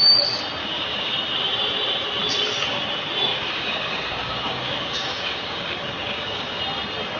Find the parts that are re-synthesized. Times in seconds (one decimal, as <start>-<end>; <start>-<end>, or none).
0.6-1.1; 3.3-6.6